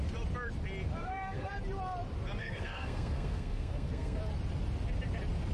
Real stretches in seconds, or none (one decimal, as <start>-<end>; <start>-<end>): 0.0-1.0; 1.5-2.4; 4.2-5.5